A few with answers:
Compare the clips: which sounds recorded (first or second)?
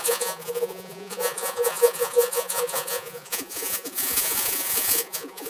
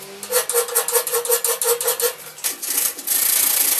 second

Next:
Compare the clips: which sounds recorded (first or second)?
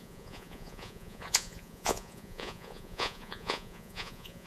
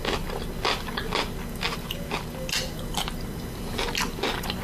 second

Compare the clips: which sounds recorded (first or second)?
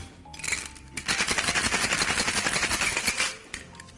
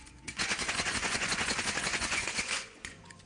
first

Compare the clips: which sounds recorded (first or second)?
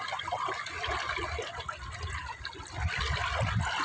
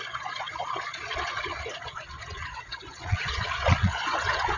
first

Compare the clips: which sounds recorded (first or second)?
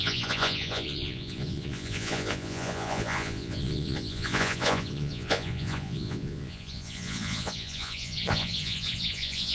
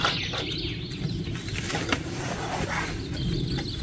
second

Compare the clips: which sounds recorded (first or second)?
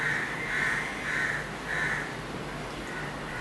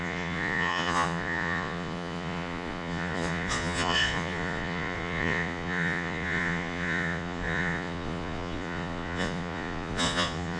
first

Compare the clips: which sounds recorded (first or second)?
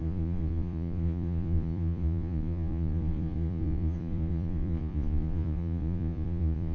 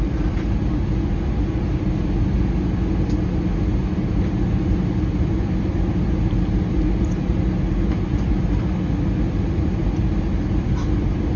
second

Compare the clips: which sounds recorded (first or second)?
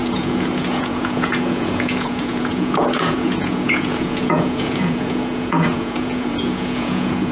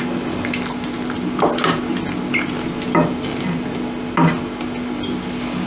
second